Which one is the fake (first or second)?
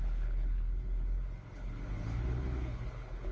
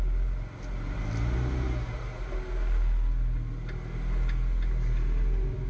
first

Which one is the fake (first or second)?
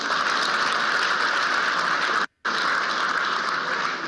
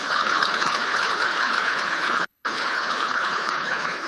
second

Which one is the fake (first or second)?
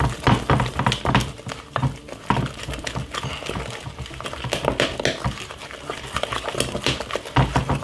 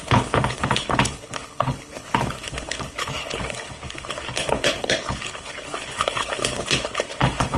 second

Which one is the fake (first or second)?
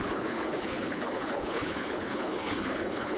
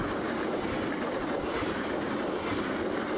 first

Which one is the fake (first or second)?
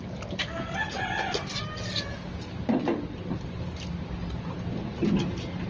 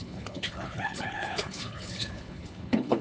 second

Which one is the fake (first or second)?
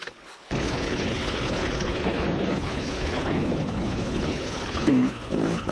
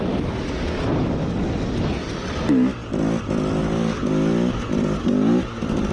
first